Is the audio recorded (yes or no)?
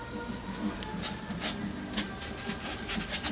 yes